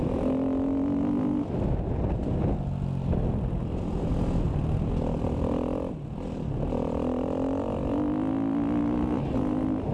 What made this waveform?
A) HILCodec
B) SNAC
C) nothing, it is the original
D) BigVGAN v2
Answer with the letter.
C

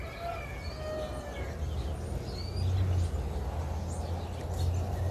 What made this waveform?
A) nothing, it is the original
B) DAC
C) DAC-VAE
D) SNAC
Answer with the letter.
A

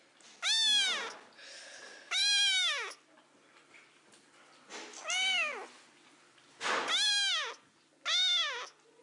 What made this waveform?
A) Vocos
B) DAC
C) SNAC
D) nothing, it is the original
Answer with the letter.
D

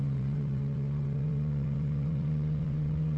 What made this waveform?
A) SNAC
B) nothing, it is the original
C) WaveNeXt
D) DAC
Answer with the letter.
C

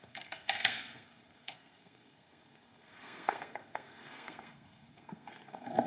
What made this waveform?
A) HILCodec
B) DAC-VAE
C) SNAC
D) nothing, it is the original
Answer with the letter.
C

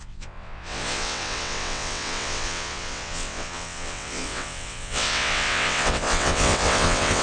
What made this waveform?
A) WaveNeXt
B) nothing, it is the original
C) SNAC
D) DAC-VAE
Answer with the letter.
A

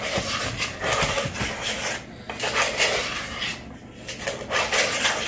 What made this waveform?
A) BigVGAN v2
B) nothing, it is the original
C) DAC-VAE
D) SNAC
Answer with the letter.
B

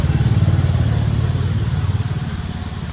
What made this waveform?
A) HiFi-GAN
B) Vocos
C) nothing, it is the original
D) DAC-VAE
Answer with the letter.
C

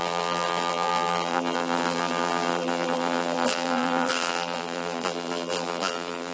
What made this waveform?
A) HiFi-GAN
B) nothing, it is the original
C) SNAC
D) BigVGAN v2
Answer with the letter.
D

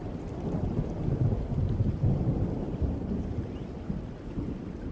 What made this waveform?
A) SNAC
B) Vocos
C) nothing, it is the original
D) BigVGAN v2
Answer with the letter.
C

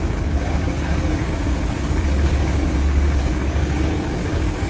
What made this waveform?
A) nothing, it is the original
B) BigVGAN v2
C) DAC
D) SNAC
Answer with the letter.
C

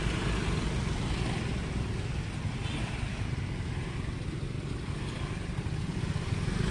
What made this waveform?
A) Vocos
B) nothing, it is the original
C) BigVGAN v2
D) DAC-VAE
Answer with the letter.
B